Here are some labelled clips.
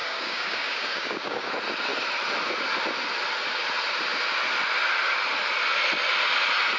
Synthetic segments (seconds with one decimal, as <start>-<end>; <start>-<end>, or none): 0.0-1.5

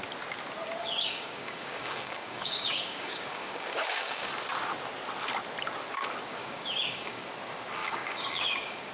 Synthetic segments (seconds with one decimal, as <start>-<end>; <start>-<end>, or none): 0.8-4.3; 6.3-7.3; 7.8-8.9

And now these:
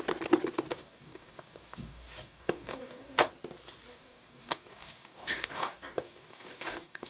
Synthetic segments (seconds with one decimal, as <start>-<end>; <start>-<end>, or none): 0.7-3.3; 3.9-7.1

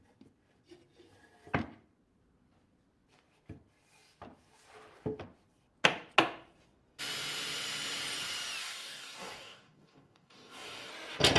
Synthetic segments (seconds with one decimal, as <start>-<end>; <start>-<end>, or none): 8.6-10.9